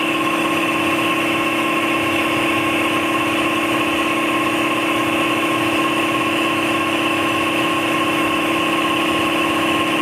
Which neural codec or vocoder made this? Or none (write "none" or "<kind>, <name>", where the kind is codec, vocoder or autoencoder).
autoencoder, DAC-VAE